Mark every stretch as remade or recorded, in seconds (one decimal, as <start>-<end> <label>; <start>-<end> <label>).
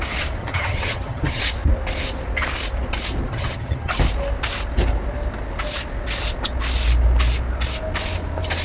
0.0-0.4 recorded; 0.4-1.4 remade; 1.4-3.3 recorded; 3.3-3.9 remade; 3.9-8.6 recorded